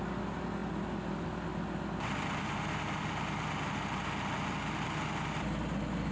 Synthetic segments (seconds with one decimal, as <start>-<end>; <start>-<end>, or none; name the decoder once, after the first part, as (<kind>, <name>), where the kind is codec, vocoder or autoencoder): none